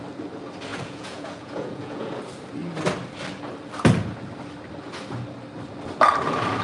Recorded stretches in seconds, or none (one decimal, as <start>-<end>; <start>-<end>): 0.0-0.7; 2.1-6.6